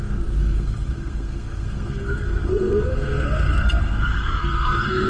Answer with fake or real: fake